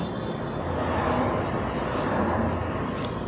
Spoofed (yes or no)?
no